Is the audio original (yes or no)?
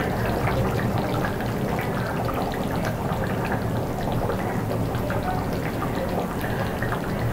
no